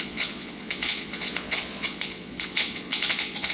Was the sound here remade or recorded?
remade